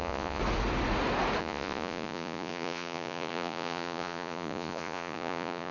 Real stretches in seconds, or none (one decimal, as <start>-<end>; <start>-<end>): 0.4-1.4